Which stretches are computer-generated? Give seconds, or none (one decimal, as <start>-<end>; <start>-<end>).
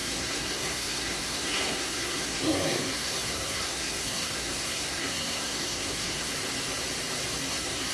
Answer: 0.0-6.3; 7.5-7.9